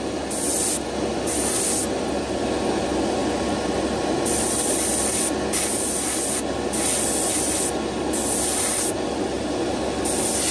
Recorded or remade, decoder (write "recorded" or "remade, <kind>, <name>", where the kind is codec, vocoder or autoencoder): recorded